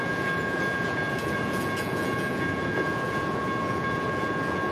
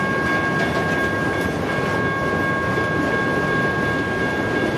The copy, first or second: first